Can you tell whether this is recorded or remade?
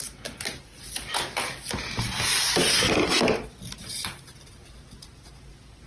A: recorded